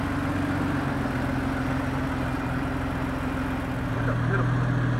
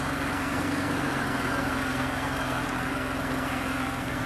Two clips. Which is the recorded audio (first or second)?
first